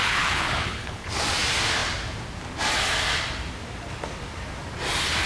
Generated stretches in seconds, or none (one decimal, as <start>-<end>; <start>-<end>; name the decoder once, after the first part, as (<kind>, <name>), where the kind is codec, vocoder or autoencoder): 0.0-1.1 (codec, HILCodec)